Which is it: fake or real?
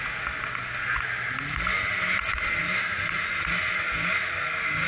real